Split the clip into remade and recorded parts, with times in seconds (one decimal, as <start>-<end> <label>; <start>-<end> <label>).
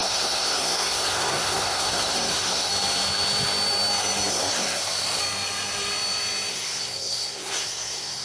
0.0-2.7 remade; 2.7-4.3 recorded; 4.3-5.2 remade; 5.2-6.5 recorded; 6.5-8.2 remade